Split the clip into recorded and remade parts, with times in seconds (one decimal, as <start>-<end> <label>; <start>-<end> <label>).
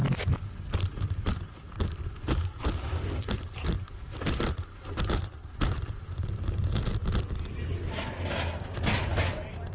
0.0-0.7 recorded; 0.7-7.0 remade; 7.0-9.7 recorded